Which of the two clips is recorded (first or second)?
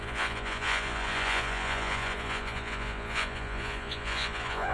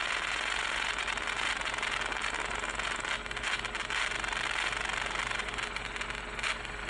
second